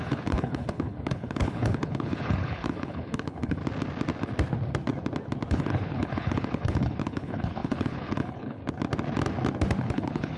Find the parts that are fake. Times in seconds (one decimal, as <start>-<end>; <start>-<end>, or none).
0.0-3.6; 5.5-8.6; 9.8-10.4